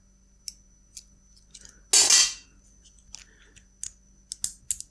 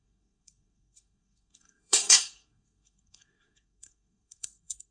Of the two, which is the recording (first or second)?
first